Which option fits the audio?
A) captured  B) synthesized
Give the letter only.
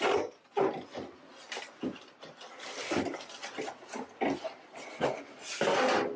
A